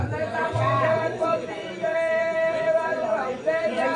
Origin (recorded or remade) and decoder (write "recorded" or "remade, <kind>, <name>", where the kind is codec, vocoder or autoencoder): remade, vocoder, Vocos